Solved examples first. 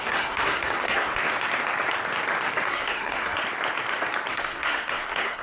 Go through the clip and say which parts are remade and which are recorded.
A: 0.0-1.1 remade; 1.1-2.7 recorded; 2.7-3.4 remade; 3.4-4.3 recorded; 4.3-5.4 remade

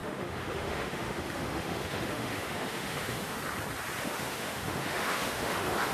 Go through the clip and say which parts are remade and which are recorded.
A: 0.0-3.4 remade; 3.4-4.0 recorded; 4.0-5.9 remade

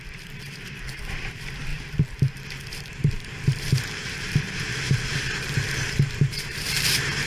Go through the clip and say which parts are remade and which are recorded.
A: 0.0-7.3 remade

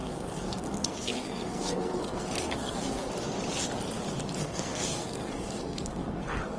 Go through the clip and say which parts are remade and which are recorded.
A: 0.0-3.1 remade; 3.1-4.4 recorded; 4.4-6.6 remade

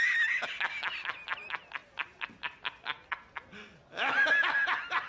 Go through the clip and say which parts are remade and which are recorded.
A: 0.0-5.1 recorded

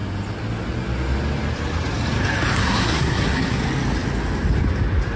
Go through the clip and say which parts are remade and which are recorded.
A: 0.0-2.6 recorded; 2.6-3.6 remade; 3.6-5.2 recorded

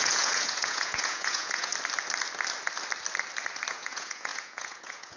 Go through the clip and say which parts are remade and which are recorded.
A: 0.0-1.7 remade; 1.7-3.7 recorded; 3.7-5.2 remade